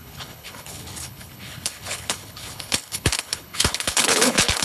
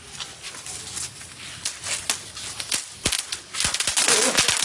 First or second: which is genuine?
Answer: second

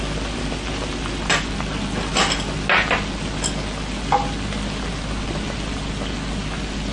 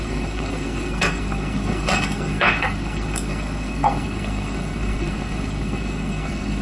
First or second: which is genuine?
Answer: first